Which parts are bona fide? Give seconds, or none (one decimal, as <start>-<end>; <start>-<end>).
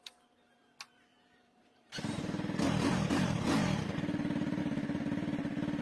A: 0.0-1.1; 4.6-5.8